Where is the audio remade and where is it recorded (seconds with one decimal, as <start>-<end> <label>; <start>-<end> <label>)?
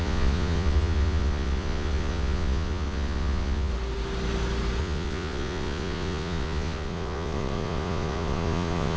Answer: 0.0-3.7 remade; 3.7-4.8 recorded; 4.8-9.0 remade